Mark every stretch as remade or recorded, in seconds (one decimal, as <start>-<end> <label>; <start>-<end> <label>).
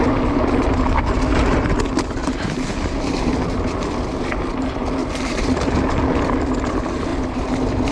0.0-2.2 recorded; 2.2-2.7 remade; 2.7-5.0 recorded; 5.0-5.7 remade; 5.7-7.1 recorded; 7.1-7.9 remade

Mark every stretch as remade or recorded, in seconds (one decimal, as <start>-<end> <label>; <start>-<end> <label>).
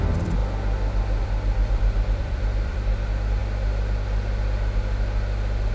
0.0-0.4 remade; 0.4-1.2 recorded; 1.2-3.4 remade; 3.4-5.7 recorded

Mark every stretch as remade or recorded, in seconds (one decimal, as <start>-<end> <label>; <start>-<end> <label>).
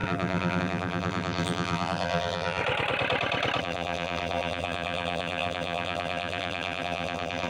0.0-2.6 remade; 2.6-3.6 recorded; 3.6-7.5 remade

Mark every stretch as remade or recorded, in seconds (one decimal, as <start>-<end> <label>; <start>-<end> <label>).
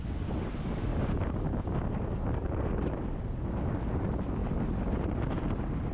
0.0-5.9 recorded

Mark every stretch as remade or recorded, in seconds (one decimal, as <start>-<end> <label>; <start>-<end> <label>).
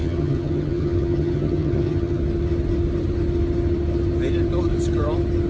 0.0-2.2 remade; 2.2-5.5 recorded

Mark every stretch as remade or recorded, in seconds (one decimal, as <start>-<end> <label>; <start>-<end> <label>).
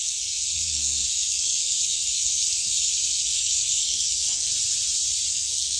0.0-4.5 remade; 4.5-5.3 recorded; 5.3-5.8 remade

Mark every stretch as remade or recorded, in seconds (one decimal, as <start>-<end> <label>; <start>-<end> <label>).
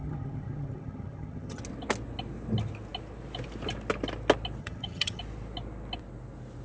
0.0-1.6 remade; 1.6-4.6 recorded; 4.6-5.2 remade; 5.2-6.6 recorded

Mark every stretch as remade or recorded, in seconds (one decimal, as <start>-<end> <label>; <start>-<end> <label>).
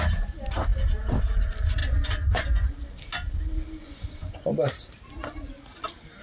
0.0-1.8 recorded; 1.8-2.7 remade; 2.7-3.8 recorded; 3.8-4.5 remade; 4.5-6.2 recorded